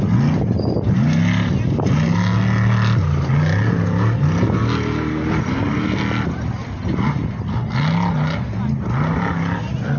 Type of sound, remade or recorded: recorded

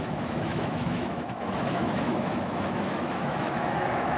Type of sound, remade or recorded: remade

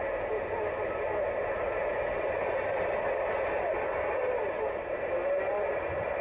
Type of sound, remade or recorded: recorded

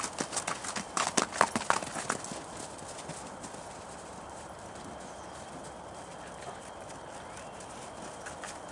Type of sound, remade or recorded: recorded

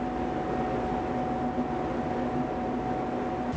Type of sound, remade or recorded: recorded